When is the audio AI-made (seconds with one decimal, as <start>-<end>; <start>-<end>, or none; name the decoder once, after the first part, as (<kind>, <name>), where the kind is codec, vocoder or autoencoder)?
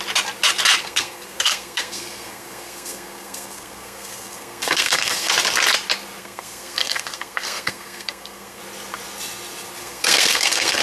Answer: 0.8-5.3 (codec, SNAC); 6.2-8.6; 9.8-10.8